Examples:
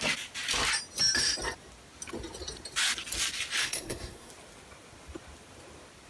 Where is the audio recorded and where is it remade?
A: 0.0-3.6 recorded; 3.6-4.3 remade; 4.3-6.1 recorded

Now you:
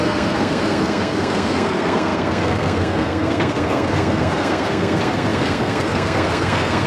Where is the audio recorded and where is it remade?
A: 0.0-6.9 remade

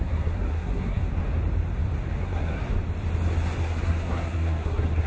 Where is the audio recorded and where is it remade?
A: 0.0-1.0 remade; 1.0-2.2 recorded; 2.2-2.6 remade; 2.6-3.6 recorded; 3.6-5.1 remade